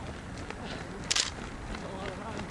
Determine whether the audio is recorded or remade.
recorded